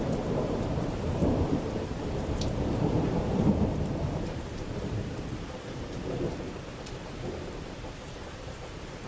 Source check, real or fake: fake